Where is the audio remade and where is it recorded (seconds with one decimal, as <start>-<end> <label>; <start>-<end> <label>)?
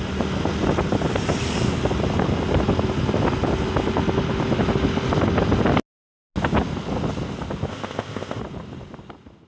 0.0-7.7 recorded; 7.7-8.4 remade; 8.4-9.5 recorded